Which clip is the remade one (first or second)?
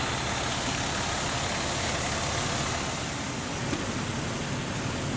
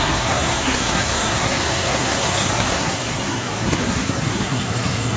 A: second